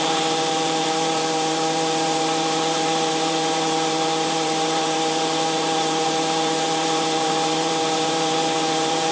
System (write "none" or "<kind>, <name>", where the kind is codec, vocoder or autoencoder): vocoder, BigVGAN v2